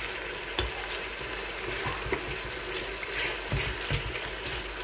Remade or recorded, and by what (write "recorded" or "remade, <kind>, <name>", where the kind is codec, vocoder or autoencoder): recorded